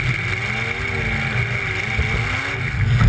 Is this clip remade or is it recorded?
recorded